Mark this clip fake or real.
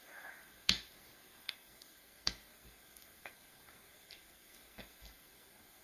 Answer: fake